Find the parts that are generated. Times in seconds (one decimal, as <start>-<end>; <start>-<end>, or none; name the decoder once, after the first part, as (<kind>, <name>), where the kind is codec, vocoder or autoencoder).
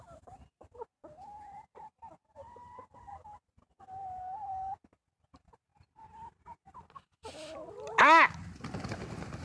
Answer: none